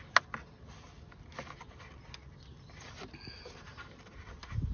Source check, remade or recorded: recorded